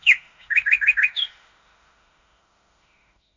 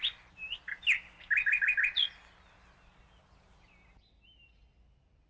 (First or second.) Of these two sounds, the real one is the second